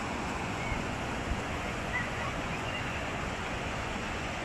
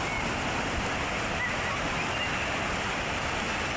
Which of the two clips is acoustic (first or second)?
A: second